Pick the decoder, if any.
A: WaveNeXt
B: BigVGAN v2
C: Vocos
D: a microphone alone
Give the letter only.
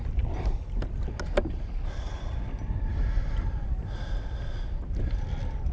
D